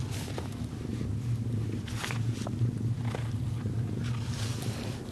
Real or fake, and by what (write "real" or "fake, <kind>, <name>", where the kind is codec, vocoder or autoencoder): real